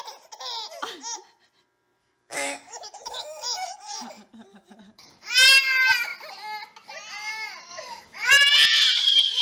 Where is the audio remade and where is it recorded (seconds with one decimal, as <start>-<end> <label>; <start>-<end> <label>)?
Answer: 0.0-2.0 recorded; 2.0-5.3 remade; 5.3-7.7 recorded; 7.7-8.3 remade; 8.3-9.4 recorded